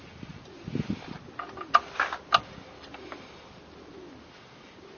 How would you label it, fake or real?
real